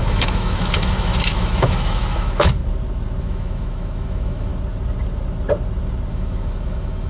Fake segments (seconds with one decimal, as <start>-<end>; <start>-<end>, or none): 0.0-2.6; 3.2-4.5; 6.1-7.1